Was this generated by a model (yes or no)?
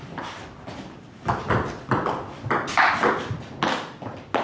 no